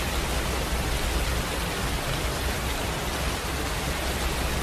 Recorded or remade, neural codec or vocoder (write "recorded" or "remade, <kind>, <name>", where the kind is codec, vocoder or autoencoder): recorded